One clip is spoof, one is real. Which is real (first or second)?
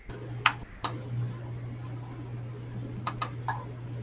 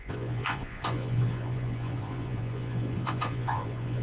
first